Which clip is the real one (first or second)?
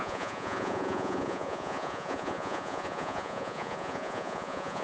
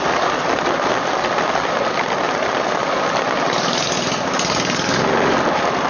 second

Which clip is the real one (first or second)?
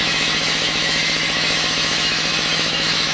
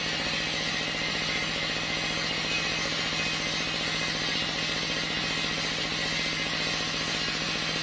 second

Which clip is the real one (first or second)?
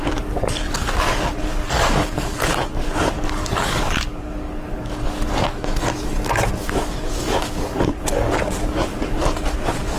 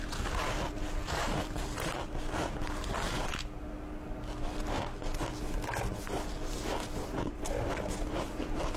second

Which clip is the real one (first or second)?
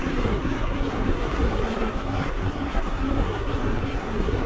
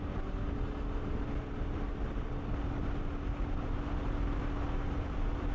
second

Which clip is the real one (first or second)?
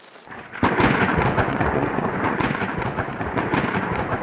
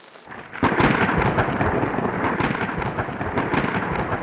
second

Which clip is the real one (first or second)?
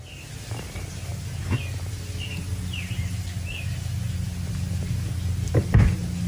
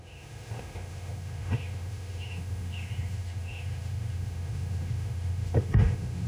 first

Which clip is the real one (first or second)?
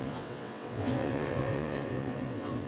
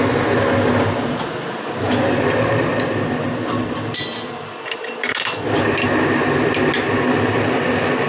second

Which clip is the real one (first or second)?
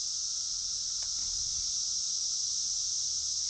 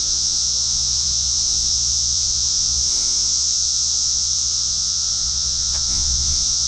first